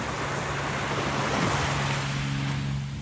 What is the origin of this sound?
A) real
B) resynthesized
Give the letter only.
A